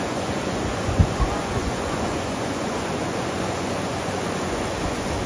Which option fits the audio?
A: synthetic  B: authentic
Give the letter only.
A